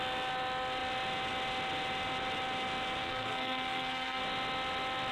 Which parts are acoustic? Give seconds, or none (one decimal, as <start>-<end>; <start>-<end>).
0.0-3.0; 4.2-5.1